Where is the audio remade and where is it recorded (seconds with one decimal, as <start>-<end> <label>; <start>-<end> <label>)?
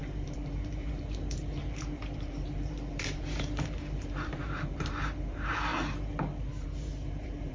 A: 0.0-5.7 remade; 5.7-6.5 recorded; 6.5-7.5 remade